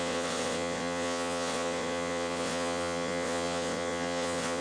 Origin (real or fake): fake